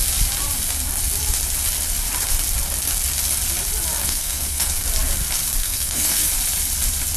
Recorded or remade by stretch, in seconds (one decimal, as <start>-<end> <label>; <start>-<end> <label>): 0.0-4.0 recorded; 4.0-4.8 remade; 4.8-5.6 recorded; 5.6-6.3 remade; 6.3-7.2 recorded